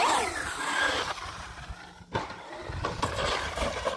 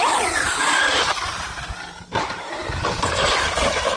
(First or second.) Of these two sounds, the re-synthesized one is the second